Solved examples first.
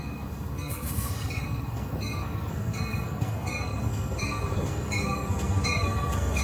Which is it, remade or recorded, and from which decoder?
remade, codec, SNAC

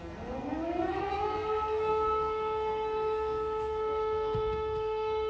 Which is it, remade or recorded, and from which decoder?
remade, codec, SNAC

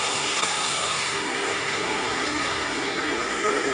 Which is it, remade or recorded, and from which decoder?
remade, codec, SNAC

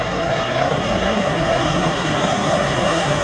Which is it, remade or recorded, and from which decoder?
remade, codec, SNAC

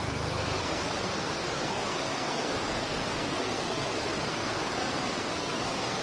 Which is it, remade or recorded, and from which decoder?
remade, codec, SNAC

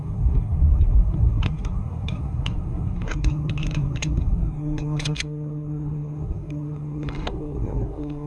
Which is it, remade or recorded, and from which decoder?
remade, codec, SNAC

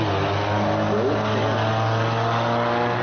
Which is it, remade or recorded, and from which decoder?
recorded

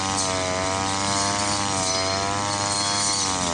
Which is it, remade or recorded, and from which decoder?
recorded